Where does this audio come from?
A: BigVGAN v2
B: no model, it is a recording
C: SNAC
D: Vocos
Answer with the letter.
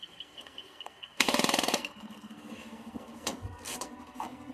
C